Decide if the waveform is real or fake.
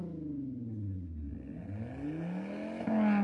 real